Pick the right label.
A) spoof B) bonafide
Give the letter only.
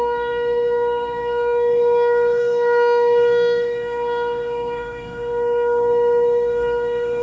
A